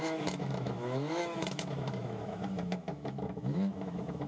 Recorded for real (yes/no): no